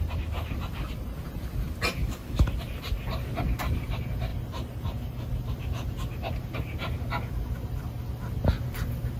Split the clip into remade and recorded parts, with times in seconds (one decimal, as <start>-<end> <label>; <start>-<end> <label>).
0.0-2.0 recorded; 2.0-2.5 remade; 2.5-9.2 recorded